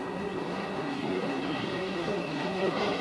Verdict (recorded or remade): remade